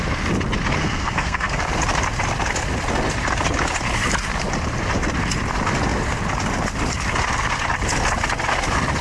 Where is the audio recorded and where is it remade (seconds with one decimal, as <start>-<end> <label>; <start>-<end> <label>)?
0.0-0.8 recorded; 0.8-1.6 remade; 1.6-9.0 recorded